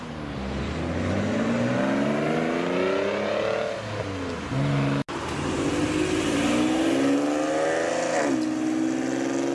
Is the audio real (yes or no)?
yes